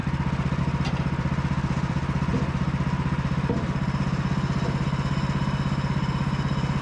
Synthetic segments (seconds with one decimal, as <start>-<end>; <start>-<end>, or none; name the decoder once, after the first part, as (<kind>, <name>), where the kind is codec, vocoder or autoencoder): 0.6-2.3 (vocoder, BigVGAN v2)